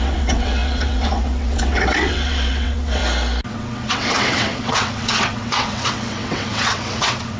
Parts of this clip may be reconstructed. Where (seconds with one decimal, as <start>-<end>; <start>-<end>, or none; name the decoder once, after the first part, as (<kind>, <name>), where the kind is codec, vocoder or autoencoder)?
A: 0.0-3.0 (vocoder, WaveNeXt); 3.5-7.4